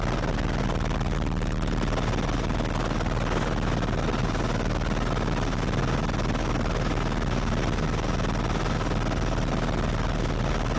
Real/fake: real